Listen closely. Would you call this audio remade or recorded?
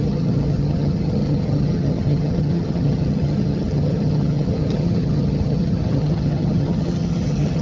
remade